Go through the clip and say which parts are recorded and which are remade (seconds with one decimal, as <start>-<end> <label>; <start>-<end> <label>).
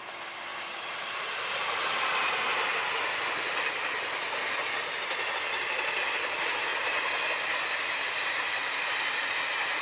0.0-0.5 recorded; 0.5-1.4 remade; 1.4-9.8 recorded